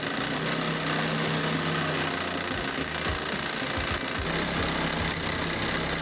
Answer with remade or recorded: recorded